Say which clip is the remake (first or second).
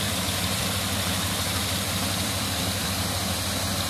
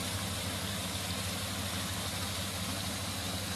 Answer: first